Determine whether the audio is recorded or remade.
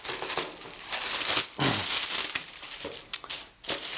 recorded